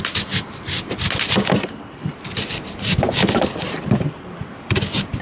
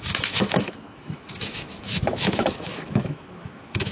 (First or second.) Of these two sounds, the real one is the first